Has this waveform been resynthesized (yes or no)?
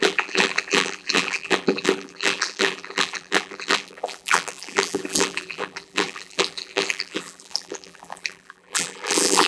yes